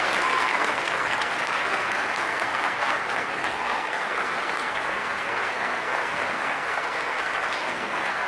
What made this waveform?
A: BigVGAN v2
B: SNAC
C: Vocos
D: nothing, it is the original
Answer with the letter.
B